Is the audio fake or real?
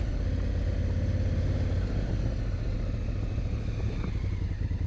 real